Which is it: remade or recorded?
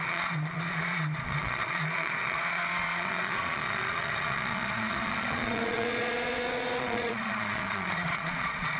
remade